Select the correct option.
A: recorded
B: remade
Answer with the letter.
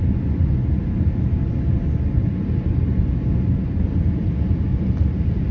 A